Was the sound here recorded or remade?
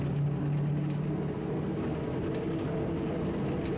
recorded